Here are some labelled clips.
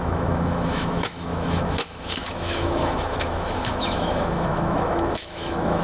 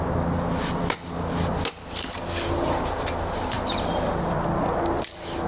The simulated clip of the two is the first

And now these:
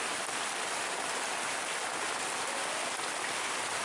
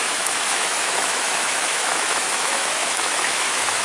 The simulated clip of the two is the second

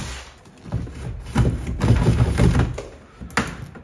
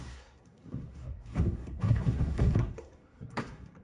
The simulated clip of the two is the second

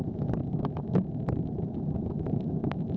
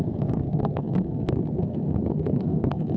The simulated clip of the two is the second